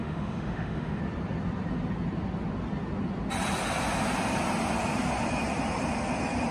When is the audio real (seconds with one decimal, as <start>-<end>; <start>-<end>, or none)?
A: 1.0-6.5